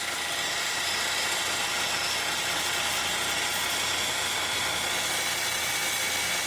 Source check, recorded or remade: recorded